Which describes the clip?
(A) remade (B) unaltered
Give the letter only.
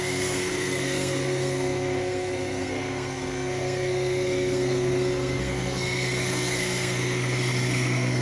A